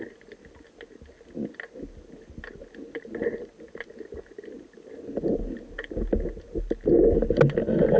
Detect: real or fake real